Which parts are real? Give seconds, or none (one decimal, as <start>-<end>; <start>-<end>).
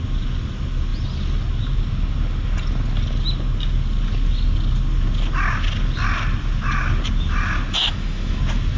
0.0-7.8; 8.4-8.8